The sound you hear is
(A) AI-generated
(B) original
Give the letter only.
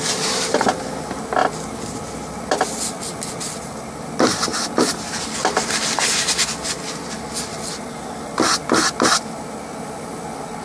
B